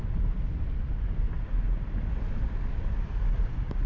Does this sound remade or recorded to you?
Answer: recorded